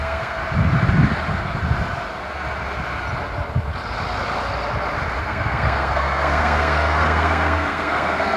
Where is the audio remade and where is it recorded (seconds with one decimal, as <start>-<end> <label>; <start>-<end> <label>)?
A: 0.0-0.4 remade; 0.4-5.2 recorded; 5.2-8.4 remade